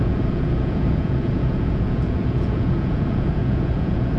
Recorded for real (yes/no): no